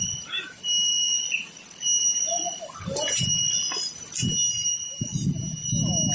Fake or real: real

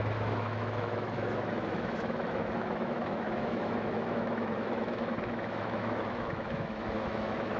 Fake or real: fake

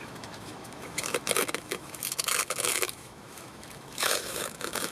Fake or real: fake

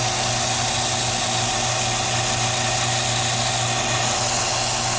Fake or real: real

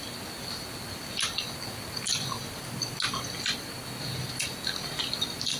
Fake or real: real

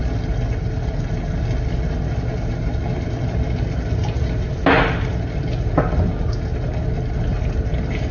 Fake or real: real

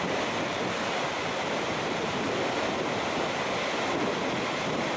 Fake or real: real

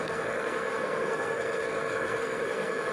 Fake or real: fake